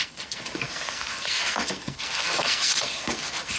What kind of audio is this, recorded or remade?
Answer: remade